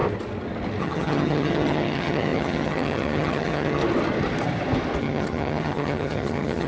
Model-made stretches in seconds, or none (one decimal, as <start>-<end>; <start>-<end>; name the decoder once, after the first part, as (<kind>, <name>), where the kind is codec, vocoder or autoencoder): 0.8-3.8 (vocoder, HiFi-GAN); 5.0-6.7